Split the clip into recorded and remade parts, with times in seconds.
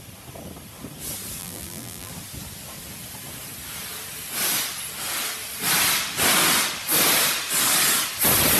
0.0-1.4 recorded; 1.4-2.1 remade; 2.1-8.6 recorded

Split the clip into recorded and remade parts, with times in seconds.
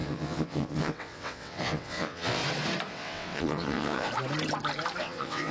0.0-2.4 remade; 2.4-2.9 recorded; 2.9-4.1 remade; 4.1-5.0 recorded; 5.0-5.5 remade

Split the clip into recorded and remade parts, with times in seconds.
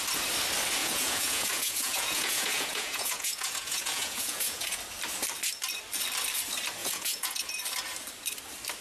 0.0-0.8 recorded; 0.8-4.8 remade; 4.8-6.8 recorded; 6.8-7.5 remade; 7.5-8.8 recorded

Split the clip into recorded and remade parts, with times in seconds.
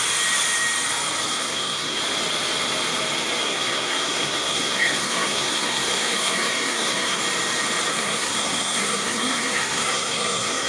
0.0-1.3 recorded; 1.3-2.0 remade; 2.0-3.4 recorded; 3.4-7.2 remade; 7.2-7.9 recorded; 7.9-10.7 remade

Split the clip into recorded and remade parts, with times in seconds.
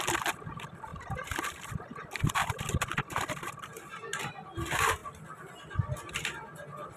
0.0-7.0 recorded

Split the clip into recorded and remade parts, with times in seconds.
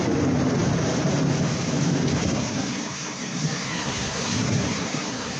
0.0-2.2 recorded; 2.2-5.4 remade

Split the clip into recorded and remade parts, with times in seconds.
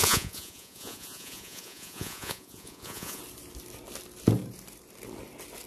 0.0-3.2 remade; 3.2-5.7 recorded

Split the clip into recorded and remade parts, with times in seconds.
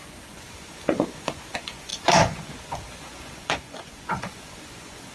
0.0-5.1 remade